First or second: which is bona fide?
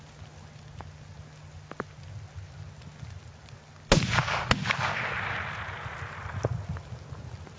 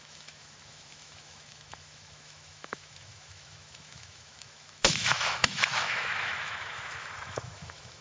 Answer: first